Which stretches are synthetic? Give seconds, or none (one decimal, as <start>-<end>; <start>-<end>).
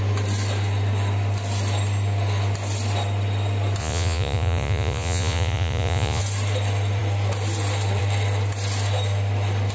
3.8-6.2